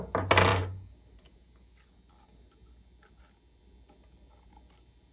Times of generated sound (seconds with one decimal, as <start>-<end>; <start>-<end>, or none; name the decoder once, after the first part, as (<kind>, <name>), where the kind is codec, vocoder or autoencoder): none